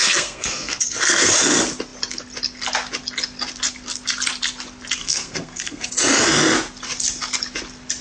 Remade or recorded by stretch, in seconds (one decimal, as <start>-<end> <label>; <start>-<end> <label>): 0.0-1.3 remade; 1.3-5.0 recorded; 5.0-5.9 remade; 5.9-8.0 recorded